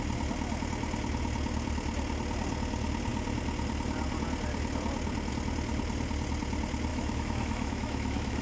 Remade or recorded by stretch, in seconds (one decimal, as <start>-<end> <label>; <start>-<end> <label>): 0.0-6.9 recorded; 6.9-8.4 remade